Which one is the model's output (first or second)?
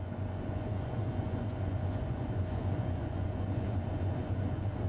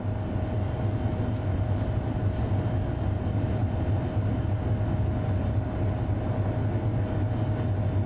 first